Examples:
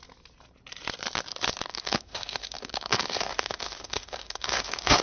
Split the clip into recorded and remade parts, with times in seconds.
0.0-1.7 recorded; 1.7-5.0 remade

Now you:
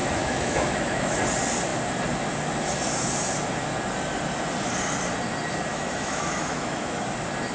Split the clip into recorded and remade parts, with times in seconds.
0.0-1.2 remade; 1.2-5.7 recorded; 5.7-7.0 remade; 7.0-7.5 recorded

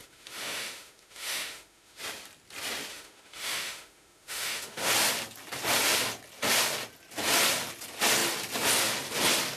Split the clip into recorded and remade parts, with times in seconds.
0.0-2.0 remade; 2.0-2.9 recorded; 2.9-4.9 remade; 4.9-9.6 recorded

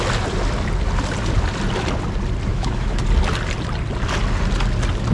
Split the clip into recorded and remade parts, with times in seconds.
0.0-2.5 recorded; 2.5-3.0 remade; 3.0-5.1 recorded